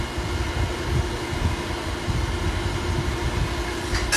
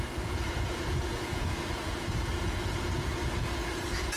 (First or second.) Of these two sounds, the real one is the first